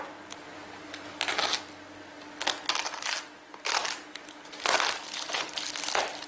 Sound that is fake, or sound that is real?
real